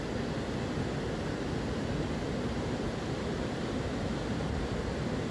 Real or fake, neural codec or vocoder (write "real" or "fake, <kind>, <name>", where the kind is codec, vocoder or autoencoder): real